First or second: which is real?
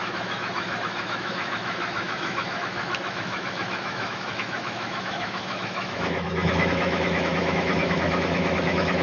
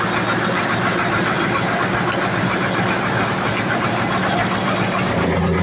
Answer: second